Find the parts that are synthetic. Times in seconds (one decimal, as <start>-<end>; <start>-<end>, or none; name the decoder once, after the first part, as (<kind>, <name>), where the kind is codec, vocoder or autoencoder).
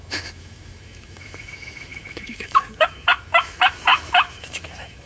0.0-5.1 (autoencoder, DAC-VAE)